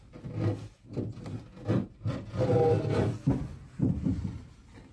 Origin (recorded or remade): recorded